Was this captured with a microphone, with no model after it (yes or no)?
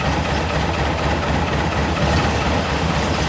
yes